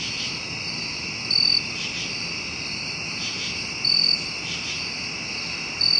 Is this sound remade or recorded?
recorded